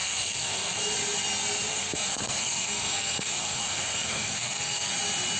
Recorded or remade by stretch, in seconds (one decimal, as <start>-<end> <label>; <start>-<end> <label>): 0.0-0.8 remade; 0.8-1.7 recorded; 1.7-4.9 remade; 4.9-5.4 recorded